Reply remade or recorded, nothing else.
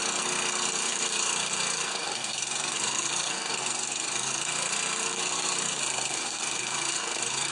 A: remade